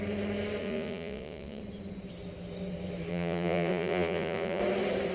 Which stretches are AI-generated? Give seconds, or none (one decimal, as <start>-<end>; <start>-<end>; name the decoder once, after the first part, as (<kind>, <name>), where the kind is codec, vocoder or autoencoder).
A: 0.6-1.6 (vocoder, Vocos); 3.1-4.6